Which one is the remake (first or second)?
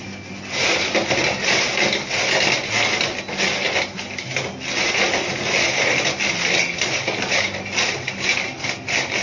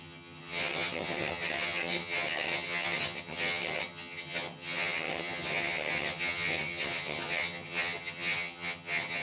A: second